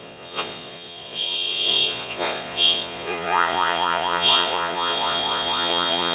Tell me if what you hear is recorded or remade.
remade